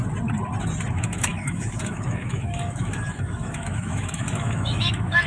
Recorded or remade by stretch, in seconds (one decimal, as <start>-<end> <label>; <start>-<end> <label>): 0.0-0.9 recorded; 0.9-5.3 remade